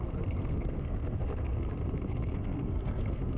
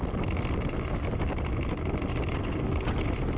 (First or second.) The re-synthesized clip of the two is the first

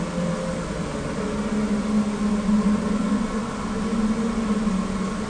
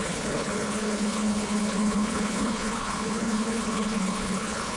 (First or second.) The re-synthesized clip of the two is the second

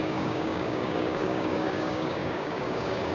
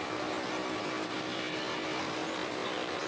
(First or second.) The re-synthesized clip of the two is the first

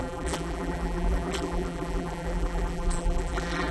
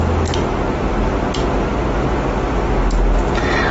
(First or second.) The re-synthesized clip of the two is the first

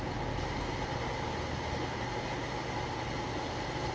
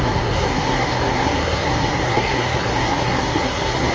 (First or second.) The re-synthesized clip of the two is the second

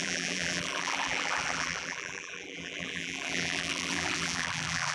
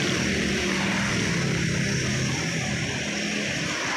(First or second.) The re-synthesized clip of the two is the first